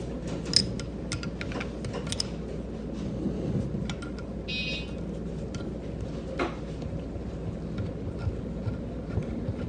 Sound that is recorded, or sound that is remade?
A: recorded